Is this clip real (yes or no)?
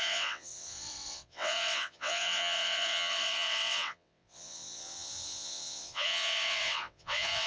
no